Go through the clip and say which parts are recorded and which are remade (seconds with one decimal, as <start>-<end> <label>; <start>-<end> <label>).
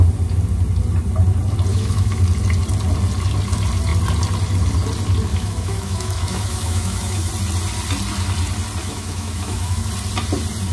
0.0-1.7 recorded; 1.7-2.2 remade; 2.2-5.3 recorded; 5.3-7.3 remade; 7.3-8.8 recorded; 8.8-9.9 remade; 9.9-10.7 recorded